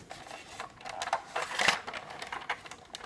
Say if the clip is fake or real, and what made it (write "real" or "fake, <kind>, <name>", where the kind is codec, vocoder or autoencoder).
real